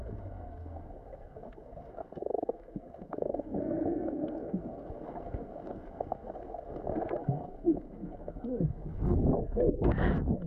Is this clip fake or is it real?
fake